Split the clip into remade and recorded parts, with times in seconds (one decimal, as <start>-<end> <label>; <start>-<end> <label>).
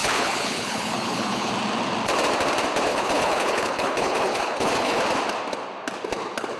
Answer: 0.0-1.5 remade; 1.5-2.9 recorded; 2.9-5.0 remade; 5.0-6.6 recorded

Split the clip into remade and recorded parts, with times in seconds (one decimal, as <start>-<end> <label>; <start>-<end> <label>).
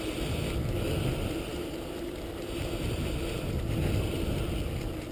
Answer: 0.0-5.1 recorded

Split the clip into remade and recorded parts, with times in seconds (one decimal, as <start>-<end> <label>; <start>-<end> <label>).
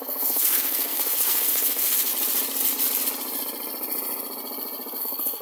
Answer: 0.0-2.1 remade; 2.1-5.0 recorded; 5.0-5.4 remade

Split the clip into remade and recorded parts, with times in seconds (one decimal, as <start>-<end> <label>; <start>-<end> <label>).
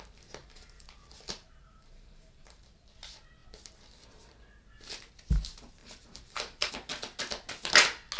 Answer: 0.0-0.4 recorded; 0.4-3.0 remade; 3.0-5.8 recorded; 5.8-6.7 remade; 6.7-8.2 recorded